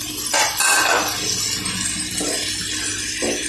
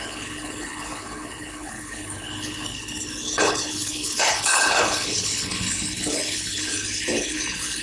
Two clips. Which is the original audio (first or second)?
first